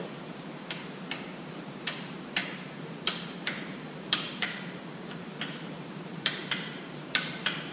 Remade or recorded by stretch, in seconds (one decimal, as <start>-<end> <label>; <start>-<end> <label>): 0.0-7.7 remade